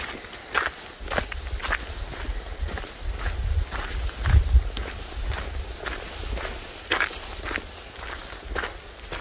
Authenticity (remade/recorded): recorded